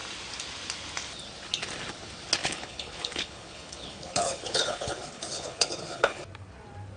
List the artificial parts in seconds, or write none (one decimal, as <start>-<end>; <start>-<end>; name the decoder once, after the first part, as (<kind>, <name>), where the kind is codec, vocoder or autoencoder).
2.4-6.2 (codec, HILCodec)

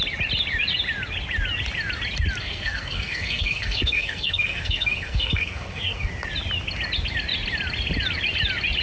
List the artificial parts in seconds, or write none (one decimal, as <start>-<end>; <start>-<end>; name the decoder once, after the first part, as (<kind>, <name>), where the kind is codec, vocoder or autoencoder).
2.4-6.1 (codec, SNAC)